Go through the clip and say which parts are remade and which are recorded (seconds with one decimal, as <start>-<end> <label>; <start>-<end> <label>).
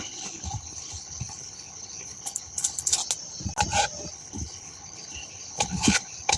0.0-3.0 remade; 3.0-4.1 recorded; 4.1-6.4 remade